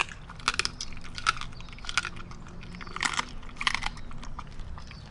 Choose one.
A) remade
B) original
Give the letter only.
B